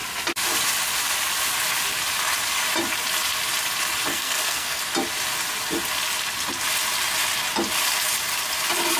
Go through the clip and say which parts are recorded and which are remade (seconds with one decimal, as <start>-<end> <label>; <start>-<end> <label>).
0.0-4.1 recorded; 4.1-4.8 remade; 4.8-9.0 recorded

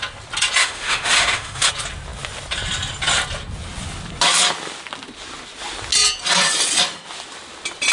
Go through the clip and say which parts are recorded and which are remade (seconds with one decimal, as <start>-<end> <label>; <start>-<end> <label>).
0.0-0.6 recorded; 0.6-1.7 remade; 1.7-7.9 recorded

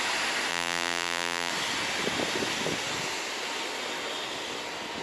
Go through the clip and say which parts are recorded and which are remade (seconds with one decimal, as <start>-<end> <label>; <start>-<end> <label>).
0.0-0.5 recorded; 0.5-1.5 remade; 1.5-5.0 recorded

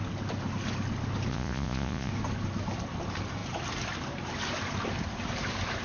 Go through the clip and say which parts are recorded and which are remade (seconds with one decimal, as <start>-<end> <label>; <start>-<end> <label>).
0.0-1.3 recorded; 1.3-2.1 remade; 2.1-5.8 recorded

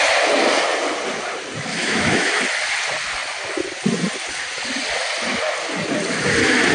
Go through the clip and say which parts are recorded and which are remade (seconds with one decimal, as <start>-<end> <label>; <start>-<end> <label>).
0.0-1.8 recorded; 1.8-2.4 remade; 2.4-6.7 recorded

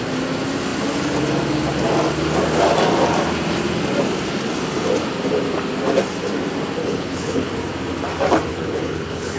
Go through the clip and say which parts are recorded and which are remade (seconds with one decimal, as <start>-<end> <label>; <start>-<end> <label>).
0.0-6.8 recorded; 6.8-7.5 remade; 7.5-8.5 recorded; 8.5-9.4 remade

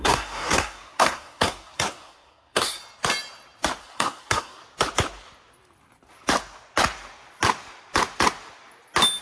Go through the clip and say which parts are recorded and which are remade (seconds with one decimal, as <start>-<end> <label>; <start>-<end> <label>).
0.0-2.8 remade; 2.8-3.8 recorded; 3.8-4.6 remade; 4.6-9.2 recorded